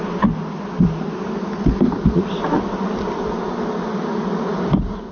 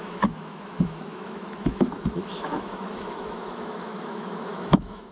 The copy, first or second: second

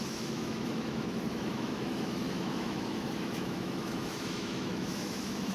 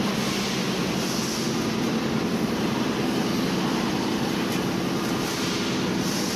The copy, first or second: first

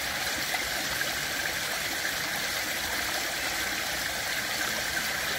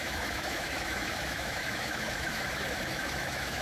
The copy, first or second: second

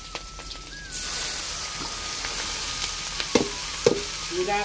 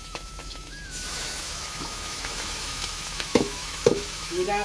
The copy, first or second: second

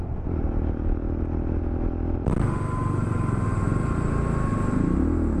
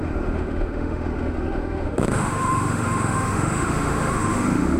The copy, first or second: second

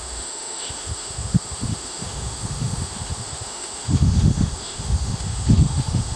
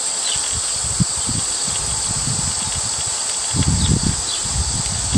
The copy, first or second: first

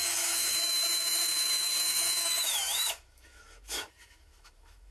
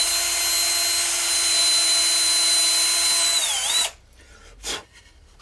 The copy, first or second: first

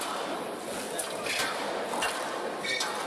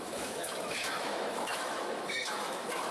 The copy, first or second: second